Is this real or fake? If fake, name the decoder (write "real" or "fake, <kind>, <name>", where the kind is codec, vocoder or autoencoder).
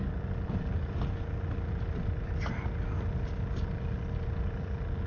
real